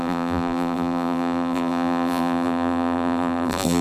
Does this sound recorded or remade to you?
remade